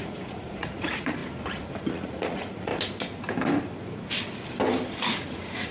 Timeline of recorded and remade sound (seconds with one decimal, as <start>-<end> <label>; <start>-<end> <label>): 0.0-1.2 remade; 1.2-1.8 recorded; 1.8-2.7 remade; 2.7-5.2 recorded; 5.2-5.7 remade

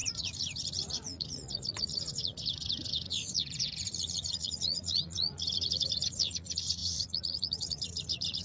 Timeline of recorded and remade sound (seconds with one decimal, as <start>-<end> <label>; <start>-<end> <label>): 0.0-8.4 remade

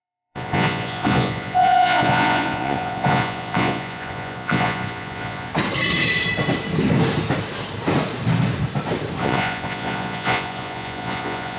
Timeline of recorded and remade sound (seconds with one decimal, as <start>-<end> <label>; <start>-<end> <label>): 0.0-5.5 remade; 5.5-9.2 recorded; 9.2-11.6 remade

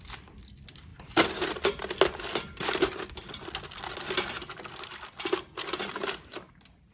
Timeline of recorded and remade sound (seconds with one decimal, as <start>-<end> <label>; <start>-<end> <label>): 0.0-6.9 recorded